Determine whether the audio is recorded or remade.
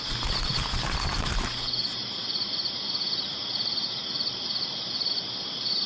recorded